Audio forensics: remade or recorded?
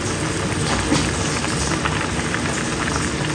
recorded